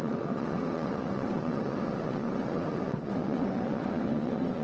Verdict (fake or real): fake